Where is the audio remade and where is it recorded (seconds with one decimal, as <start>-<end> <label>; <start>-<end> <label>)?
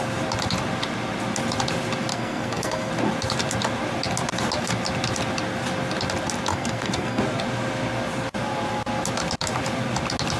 0.0-2.1 recorded; 2.1-2.9 remade; 2.9-6.5 recorded; 6.5-7.2 remade; 7.2-10.4 recorded